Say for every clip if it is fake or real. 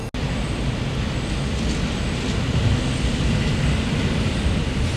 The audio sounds real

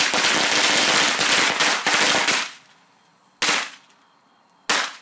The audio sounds real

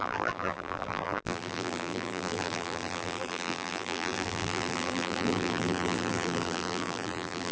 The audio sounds fake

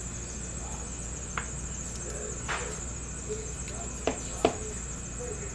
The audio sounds real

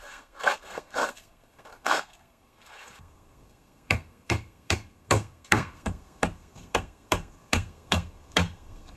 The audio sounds fake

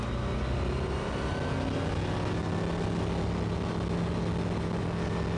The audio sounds real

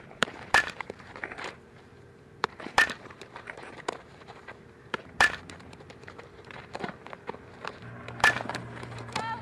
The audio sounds fake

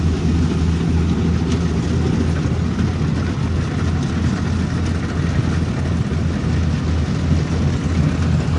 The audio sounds real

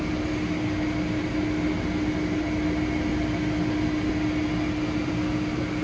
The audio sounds real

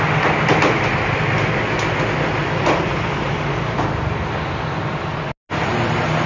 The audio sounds real